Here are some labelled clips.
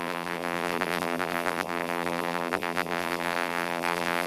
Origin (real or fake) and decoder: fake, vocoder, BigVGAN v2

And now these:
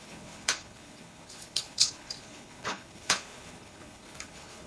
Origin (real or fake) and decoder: fake, codec, HILCodec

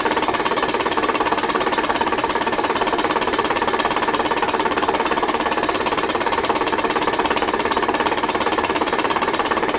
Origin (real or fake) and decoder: fake, vocoder, BigVGAN v2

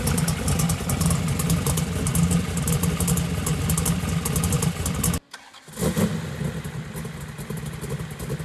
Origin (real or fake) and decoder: real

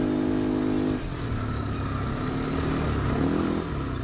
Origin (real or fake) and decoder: real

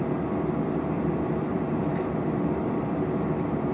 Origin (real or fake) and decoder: real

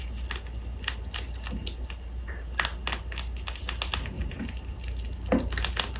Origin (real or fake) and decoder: real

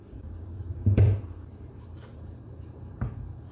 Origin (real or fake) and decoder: fake, vocoder, BigVGAN v2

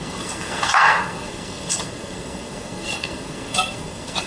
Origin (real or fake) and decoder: fake, codec, SNAC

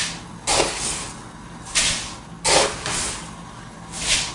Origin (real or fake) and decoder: real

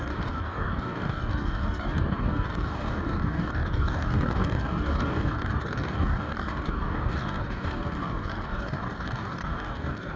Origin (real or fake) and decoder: fake, codec, DAC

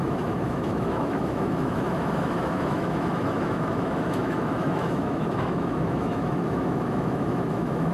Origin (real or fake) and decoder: fake, autoencoder, DAC-VAE